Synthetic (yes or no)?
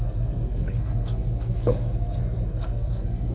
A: yes